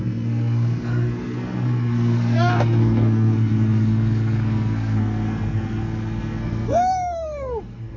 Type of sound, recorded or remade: remade